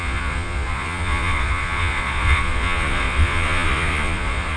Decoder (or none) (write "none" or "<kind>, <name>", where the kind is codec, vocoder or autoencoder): vocoder, Vocos